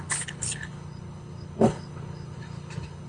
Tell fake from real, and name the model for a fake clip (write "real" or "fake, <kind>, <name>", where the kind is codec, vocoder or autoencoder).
fake, codec, HILCodec